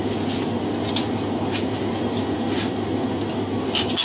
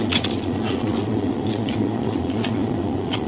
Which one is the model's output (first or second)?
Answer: second